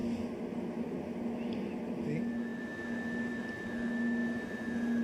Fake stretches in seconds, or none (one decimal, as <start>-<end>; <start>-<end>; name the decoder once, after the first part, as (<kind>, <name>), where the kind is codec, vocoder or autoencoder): none